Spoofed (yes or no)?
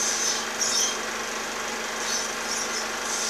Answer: no